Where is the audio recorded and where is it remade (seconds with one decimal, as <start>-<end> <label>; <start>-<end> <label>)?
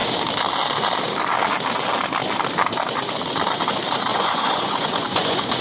0.0-4.1 recorded; 4.1-5.6 remade